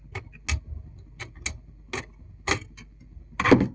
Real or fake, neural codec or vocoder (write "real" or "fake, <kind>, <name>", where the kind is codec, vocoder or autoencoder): real